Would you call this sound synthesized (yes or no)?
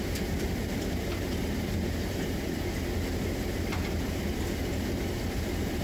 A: yes